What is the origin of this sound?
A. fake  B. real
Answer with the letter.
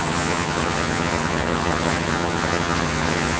A